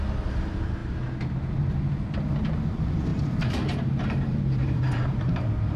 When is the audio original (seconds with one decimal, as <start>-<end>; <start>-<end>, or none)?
0.0-3.1